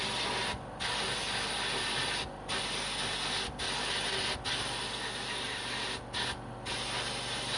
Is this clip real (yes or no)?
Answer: yes